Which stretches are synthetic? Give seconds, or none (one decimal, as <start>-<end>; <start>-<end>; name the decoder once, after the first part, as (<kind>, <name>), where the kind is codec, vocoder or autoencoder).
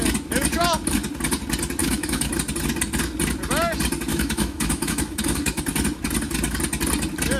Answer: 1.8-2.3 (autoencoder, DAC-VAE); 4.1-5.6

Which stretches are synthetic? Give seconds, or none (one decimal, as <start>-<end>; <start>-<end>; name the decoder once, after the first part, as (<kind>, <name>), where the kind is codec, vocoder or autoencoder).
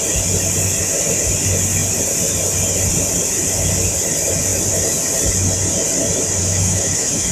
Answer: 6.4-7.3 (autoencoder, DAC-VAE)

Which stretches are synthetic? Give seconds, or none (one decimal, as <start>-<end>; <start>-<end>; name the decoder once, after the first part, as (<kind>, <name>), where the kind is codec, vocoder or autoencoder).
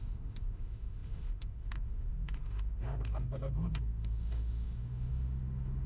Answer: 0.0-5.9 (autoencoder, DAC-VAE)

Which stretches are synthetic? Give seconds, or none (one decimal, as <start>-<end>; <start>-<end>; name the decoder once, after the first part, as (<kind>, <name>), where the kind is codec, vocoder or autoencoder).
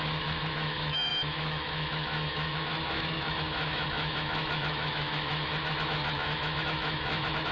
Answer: 0.0-7.5 (autoencoder, DAC-VAE)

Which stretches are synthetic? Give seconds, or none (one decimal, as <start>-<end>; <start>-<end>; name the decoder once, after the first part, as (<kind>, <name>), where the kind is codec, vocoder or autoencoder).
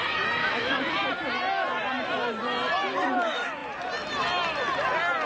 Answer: 0.4-0.9 (autoencoder, DAC-VAE)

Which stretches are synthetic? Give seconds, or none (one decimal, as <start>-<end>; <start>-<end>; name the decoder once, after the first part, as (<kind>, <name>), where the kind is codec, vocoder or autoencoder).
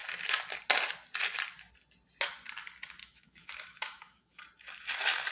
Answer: 3.0-4.4 (autoencoder, DAC-VAE)